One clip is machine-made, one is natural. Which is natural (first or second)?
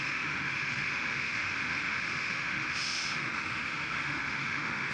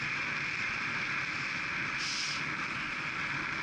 second